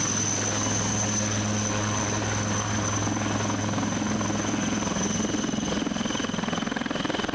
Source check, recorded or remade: recorded